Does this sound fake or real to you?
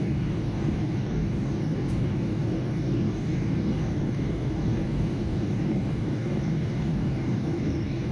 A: fake